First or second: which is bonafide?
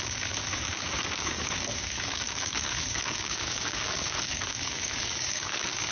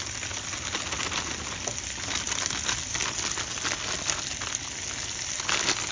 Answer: second